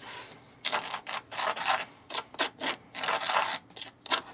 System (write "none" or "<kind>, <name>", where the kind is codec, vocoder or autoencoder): none